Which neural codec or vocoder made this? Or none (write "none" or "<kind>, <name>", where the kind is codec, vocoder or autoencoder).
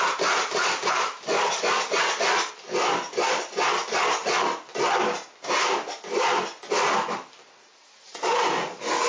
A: none